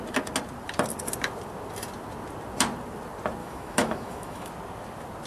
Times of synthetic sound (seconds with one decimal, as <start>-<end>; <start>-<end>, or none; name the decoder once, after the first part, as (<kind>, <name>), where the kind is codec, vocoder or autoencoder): 3.4-4.5 (autoencoder, DAC-VAE)